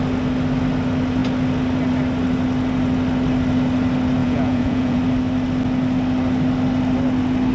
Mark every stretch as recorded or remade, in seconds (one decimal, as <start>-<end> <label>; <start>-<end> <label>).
0.0-4.2 recorded; 4.2-5.0 remade; 5.0-7.5 recorded

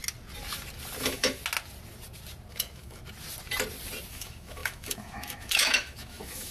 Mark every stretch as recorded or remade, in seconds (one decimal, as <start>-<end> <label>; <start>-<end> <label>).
0.0-1.0 recorded; 1.0-1.4 remade; 1.4-2.5 recorded; 2.5-3.0 remade; 3.0-4.1 recorded; 4.1-6.5 remade

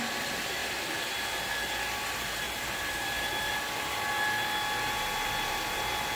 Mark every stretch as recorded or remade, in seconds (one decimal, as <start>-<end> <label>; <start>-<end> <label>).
0.0-0.6 recorded; 0.6-3.6 remade; 3.6-6.2 recorded